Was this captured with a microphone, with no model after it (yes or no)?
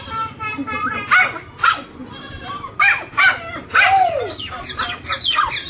yes